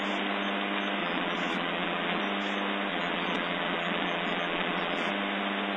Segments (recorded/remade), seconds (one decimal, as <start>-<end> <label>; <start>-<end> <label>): 0.0-1.0 recorded; 1.0-2.2 remade; 2.2-2.9 recorded; 2.9-5.1 remade; 5.1-5.8 recorded